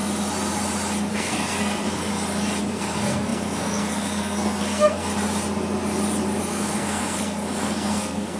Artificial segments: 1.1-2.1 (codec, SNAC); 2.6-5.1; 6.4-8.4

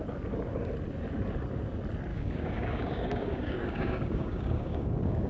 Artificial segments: 2.1-5.3 (codec, DAC)

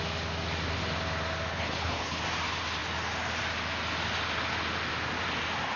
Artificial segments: 1.5-2.2 (codec, HILCodec)

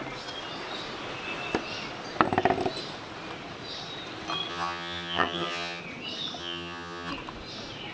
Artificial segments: 4.5-5.8 (vocoder, HiFi-GAN); 6.4-7.1